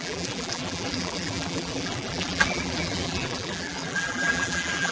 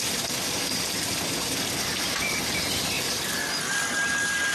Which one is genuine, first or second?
second